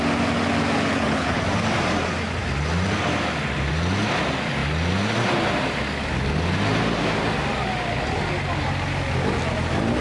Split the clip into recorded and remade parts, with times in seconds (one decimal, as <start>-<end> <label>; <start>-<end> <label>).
0.0-0.9 recorded; 0.9-1.4 remade; 1.4-10.0 recorded